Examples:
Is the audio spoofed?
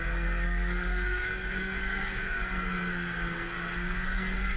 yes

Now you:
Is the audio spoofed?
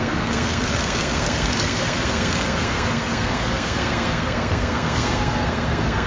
yes